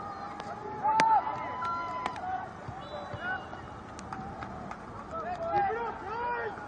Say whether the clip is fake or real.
real